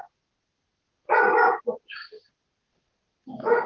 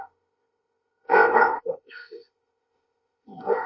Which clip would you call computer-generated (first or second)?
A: second